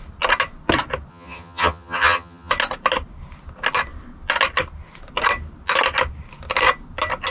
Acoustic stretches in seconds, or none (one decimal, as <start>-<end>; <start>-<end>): 0.0-1.1; 2.5-7.3

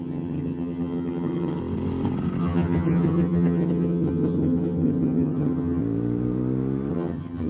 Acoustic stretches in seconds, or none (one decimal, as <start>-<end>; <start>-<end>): 1.6-2.4; 5.8-6.9

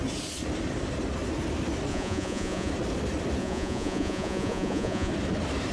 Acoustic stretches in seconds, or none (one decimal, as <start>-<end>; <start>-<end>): 0.0-1.9; 2.7-3.4; 5.1-5.7